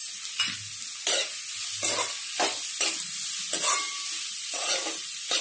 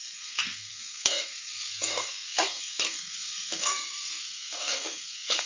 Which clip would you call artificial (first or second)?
second